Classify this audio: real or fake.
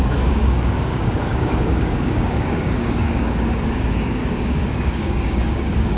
fake